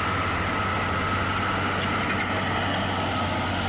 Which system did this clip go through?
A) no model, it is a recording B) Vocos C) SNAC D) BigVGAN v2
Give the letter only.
A